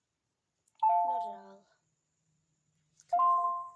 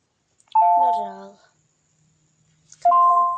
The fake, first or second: first